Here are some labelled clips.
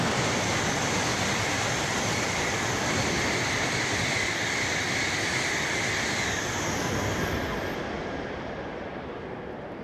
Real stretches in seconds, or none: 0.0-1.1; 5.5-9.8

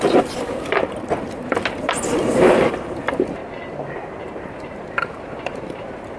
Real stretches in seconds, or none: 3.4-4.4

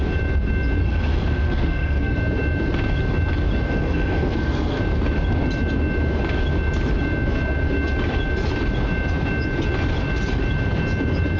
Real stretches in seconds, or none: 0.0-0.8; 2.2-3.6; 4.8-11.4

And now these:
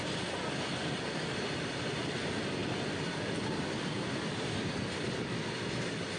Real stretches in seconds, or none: 0.0-6.2

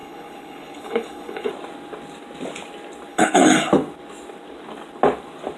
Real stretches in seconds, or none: 1.5-3.1; 3.7-5.6